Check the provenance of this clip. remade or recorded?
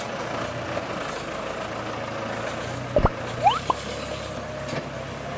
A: recorded